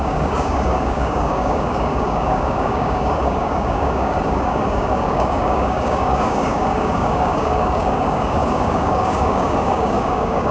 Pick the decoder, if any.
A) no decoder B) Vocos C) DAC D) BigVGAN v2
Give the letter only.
C